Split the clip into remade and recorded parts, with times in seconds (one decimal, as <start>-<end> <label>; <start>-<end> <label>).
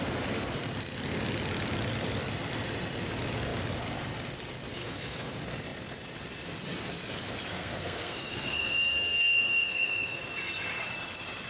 0.0-4.8 recorded; 4.8-5.3 remade; 5.3-7.5 recorded; 7.5-10.2 remade; 10.2-11.5 recorded